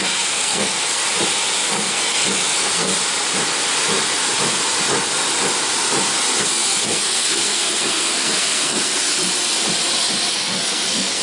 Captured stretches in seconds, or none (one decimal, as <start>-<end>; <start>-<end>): 1.0-1.7; 2.9-6.4; 9.2-10.3